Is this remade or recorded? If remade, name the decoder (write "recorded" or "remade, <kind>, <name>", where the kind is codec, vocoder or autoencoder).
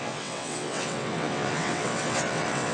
remade, vocoder, WaveNeXt